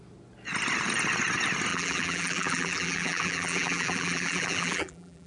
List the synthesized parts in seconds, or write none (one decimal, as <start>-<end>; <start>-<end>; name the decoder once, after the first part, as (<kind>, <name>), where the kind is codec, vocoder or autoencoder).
1.7-5.3 (vocoder, BigVGAN v2)